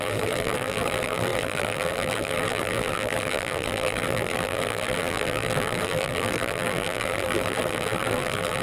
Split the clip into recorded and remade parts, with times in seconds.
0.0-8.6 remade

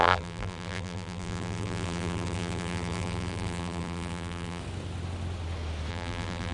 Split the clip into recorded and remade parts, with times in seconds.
0.0-4.6 remade; 4.6-5.9 recorded; 5.9-6.5 remade

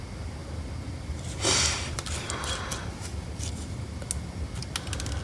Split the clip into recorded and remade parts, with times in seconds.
0.0-5.2 recorded